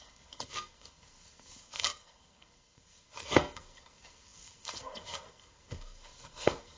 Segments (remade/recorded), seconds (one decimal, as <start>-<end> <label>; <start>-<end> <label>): 0.0-6.8 remade